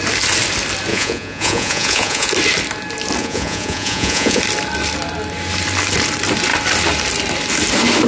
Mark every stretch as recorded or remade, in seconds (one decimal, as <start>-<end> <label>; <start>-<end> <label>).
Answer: 0.0-0.9 recorded; 0.9-2.3 remade; 2.3-3.2 recorded; 3.2-4.4 remade; 4.4-8.1 recorded